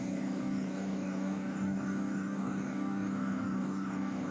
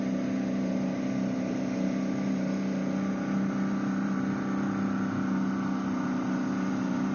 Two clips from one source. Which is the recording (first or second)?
second